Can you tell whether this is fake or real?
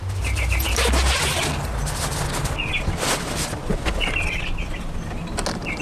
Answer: real